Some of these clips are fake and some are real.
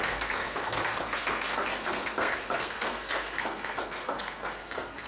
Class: fake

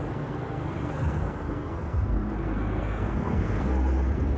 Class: fake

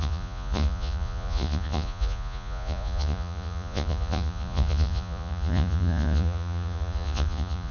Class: fake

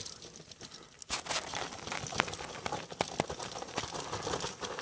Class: real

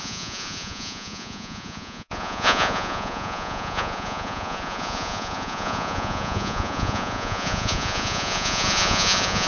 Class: fake